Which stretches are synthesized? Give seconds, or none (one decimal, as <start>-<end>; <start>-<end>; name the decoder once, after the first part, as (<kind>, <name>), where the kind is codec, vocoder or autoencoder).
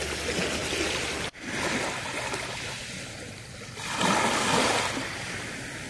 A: none